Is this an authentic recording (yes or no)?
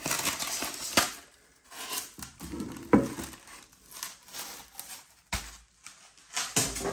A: yes